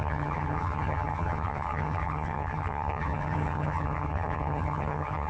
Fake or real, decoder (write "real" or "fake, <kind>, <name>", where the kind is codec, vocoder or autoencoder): fake, vocoder, HiFi-GAN